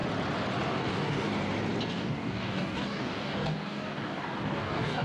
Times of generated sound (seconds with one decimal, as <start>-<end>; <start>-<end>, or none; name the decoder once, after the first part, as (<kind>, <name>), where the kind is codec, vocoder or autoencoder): 0.7-1.3 (codec, DAC); 1.9-5.0

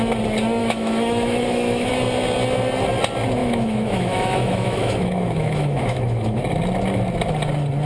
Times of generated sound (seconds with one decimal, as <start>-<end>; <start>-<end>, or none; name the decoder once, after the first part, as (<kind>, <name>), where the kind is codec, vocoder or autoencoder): 0.6-1.9 (autoencoder, DAC-VAE); 3.4-6.4

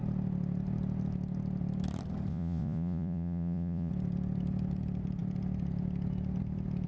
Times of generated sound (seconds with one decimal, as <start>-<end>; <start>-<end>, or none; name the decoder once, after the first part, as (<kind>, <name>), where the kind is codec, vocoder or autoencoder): 2.3-3.9 (vocoder, Vocos)

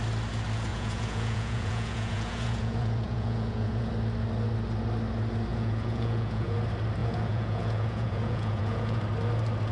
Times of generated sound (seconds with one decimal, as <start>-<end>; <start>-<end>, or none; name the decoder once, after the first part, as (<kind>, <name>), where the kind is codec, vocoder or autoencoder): 0.7-3.9 (vocoder, Vocos); 5.5-6.6; 7.0-9.0